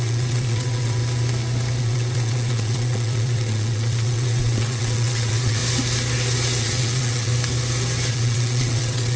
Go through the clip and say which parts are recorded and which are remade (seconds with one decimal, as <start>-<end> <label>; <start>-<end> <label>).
0.0-1.0 remade; 1.0-1.8 recorded; 1.8-5.6 remade; 5.6-6.6 recorded; 6.6-7.3 remade; 7.3-8.1 recorded; 8.1-9.2 remade